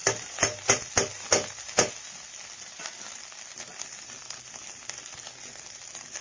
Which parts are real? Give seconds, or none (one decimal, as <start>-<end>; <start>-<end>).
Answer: 0.0-6.2